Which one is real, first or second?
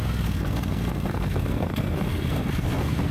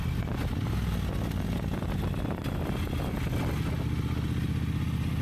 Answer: second